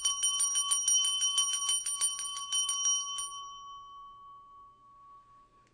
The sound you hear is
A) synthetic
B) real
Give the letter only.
B